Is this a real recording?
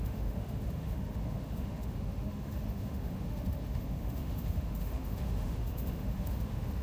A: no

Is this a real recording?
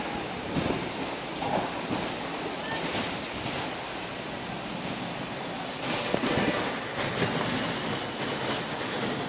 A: yes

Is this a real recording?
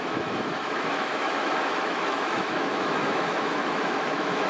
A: no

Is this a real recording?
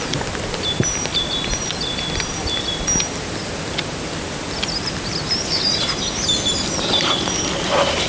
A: yes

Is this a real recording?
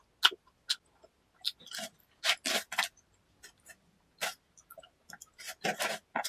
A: yes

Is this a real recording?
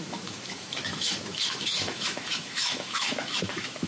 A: no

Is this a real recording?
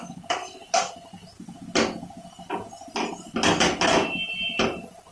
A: yes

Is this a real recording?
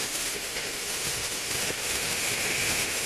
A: no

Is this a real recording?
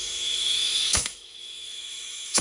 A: no